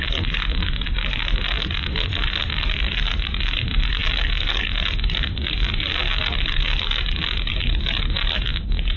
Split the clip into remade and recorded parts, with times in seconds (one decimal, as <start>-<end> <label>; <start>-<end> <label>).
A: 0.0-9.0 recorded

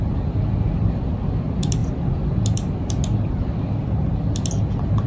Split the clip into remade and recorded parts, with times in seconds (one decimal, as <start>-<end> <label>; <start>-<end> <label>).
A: 0.0-5.1 recorded

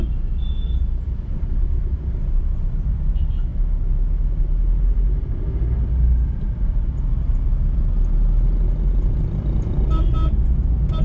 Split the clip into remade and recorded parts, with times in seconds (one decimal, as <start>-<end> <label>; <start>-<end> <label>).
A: 0.0-0.4 recorded; 0.4-3.1 remade; 3.1-11.0 recorded

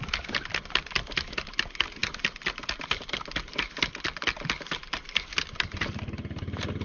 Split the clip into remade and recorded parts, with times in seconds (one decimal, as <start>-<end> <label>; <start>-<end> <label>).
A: 0.0-6.8 recorded

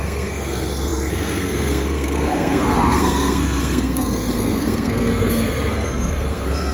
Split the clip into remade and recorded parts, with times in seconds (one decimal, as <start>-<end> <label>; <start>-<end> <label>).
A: 0.0-6.7 remade

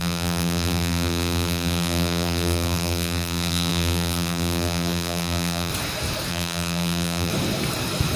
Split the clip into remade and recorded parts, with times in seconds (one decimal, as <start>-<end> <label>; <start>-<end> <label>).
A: 0.0-5.7 remade; 5.7-6.3 recorded; 6.3-7.3 remade; 7.3-8.2 recorded

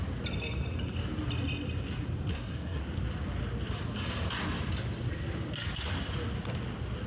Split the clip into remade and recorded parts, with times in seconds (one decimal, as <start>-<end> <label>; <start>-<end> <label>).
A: 0.0-2.3 recorded; 2.3-2.8 remade; 2.8-7.1 recorded